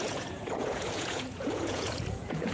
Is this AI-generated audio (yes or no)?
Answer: yes